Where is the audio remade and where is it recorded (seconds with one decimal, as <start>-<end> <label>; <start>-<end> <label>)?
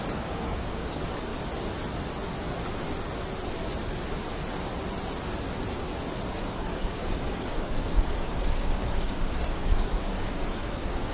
0.0-1.3 remade; 1.3-6.3 recorded; 6.3-11.1 remade